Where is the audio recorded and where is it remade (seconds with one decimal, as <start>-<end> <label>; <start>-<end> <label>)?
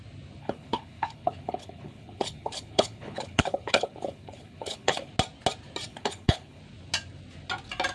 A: 0.0-0.4 recorded; 0.4-5.1 remade; 5.1-5.9 recorded; 5.9-6.6 remade; 6.6-7.9 recorded